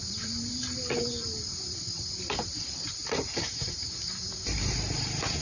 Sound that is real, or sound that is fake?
fake